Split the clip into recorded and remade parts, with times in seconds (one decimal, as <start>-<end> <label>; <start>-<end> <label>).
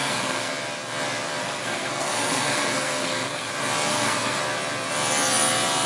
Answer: 0.0-0.5 remade; 0.5-1.4 recorded; 1.4-3.5 remade; 3.5-3.9 recorded; 3.9-4.4 remade; 4.4-5.9 recorded